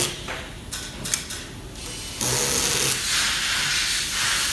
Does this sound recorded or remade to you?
recorded